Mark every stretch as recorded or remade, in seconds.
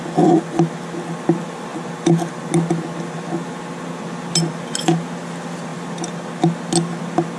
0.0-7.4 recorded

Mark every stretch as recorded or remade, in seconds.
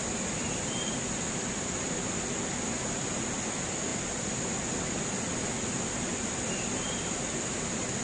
0.0-8.0 recorded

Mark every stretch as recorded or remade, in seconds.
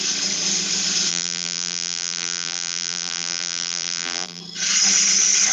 0.0-1.1 recorded; 1.1-4.4 remade; 4.4-5.5 recorded